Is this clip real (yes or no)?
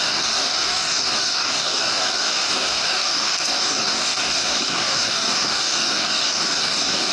no